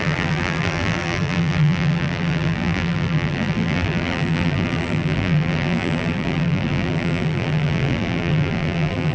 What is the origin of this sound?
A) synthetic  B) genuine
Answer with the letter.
A